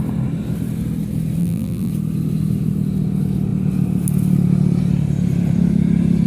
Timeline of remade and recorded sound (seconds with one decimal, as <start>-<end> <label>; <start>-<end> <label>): 0.0-1.4 recorded; 1.4-1.9 remade; 1.9-6.3 recorded